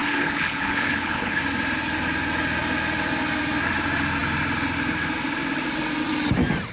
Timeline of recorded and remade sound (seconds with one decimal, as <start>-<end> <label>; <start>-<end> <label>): 0.0-1.4 remade; 1.4-6.7 recorded